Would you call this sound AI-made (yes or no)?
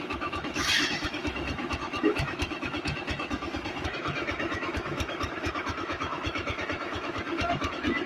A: yes